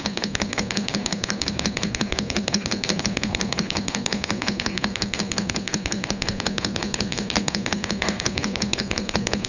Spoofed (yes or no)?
yes